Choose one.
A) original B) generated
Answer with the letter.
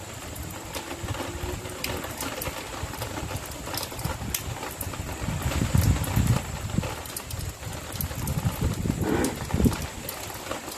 A